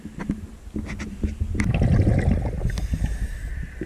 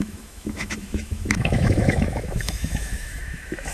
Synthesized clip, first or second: second